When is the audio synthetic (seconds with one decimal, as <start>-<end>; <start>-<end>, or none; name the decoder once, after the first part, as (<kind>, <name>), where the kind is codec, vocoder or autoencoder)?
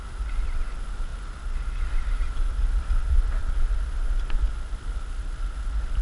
none